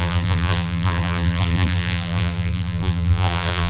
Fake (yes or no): yes